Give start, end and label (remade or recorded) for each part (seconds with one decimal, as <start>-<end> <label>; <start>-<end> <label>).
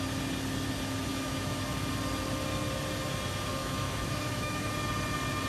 0.0-1.1 recorded; 1.1-1.6 remade; 1.6-3.6 recorded; 3.6-4.7 remade; 4.7-5.5 recorded